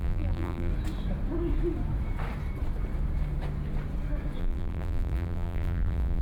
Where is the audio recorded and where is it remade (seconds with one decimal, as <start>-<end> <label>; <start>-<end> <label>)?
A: 0.0-0.7 remade; 0.7-4.4 recorded; 4.4-6.2 remade